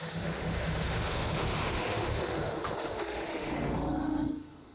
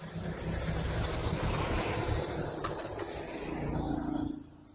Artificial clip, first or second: first